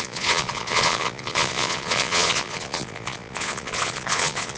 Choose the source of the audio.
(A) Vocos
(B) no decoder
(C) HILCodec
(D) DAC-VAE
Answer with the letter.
A